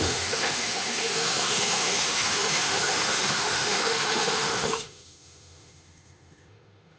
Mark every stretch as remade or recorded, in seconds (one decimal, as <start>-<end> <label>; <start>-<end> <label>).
0.0-7.0 remade